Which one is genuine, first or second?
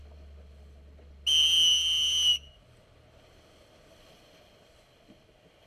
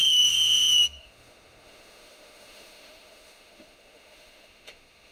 first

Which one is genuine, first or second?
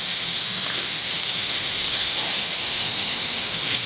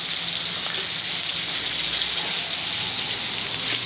second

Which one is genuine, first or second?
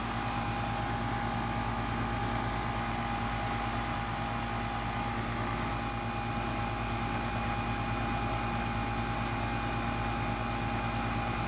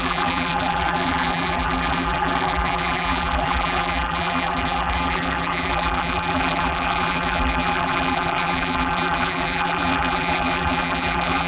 first